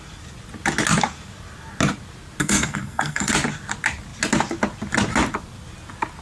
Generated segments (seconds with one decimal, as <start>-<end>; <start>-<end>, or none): 2.4-3.3